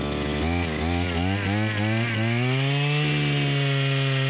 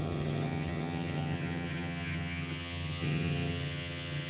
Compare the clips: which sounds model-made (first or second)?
second